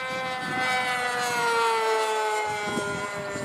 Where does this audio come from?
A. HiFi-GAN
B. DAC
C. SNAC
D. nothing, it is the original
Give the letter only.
D